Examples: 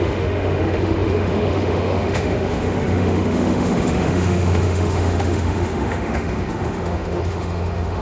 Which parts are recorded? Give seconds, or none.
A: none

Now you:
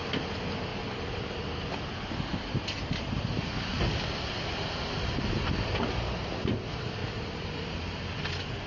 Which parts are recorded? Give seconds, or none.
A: 0.0-8.7

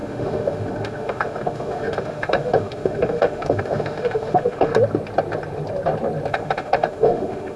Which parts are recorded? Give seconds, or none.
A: 4.7-6.3

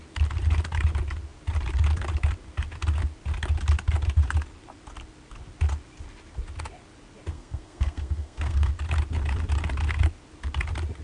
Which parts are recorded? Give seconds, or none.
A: 0.0-7.3; 8.7-11.0

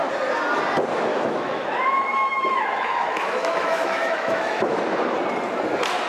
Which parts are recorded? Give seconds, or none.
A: 0.0-1.1; 4.8-6.1